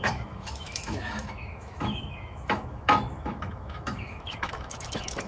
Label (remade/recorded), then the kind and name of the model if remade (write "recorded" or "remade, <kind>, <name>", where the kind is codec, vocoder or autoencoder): remade, autoencoder, DAC-VAE